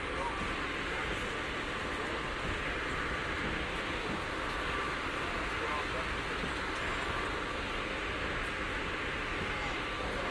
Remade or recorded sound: recorded